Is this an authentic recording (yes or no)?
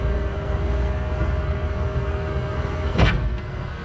no